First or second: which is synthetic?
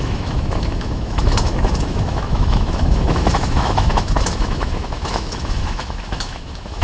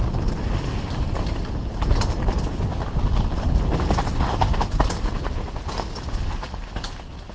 first